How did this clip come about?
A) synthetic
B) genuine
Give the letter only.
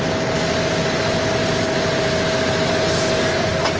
B